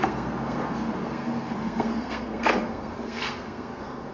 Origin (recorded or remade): remade